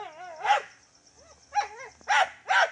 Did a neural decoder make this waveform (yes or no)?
no